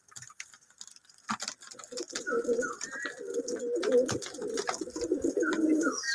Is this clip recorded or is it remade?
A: recorded